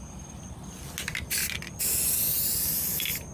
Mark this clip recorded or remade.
recorded